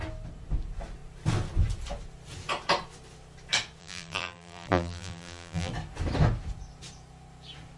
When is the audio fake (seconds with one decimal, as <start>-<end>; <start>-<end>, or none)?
3.8-5.7